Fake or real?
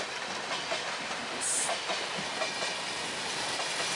real